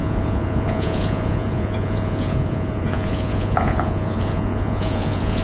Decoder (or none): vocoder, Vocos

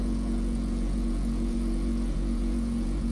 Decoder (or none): vocoder, Vocos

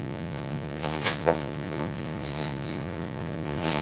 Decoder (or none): vocoder, Vocos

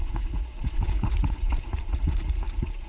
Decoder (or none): vocoder, Vocos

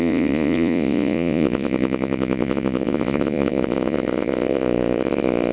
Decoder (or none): vocoder, Vocos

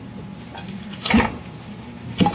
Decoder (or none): none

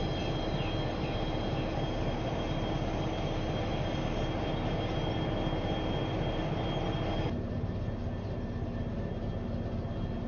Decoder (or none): none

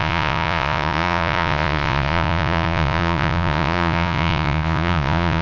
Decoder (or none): vocoder, Vocos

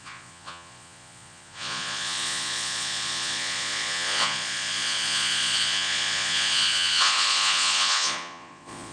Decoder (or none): vocoder, Vocos